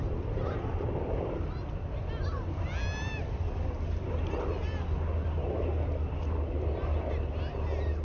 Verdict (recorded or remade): recorded